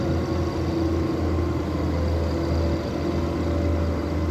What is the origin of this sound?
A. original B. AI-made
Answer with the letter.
A